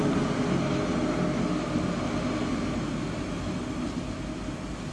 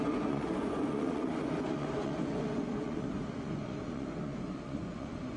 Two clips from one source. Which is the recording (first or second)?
first